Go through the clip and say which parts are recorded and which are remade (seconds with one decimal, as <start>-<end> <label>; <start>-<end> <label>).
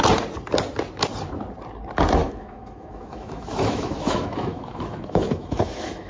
0.0-2.2 recorded; 2.2-6.1 remade